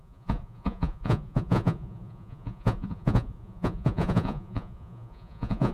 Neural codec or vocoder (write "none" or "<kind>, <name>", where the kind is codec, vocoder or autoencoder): vocoder, Vocos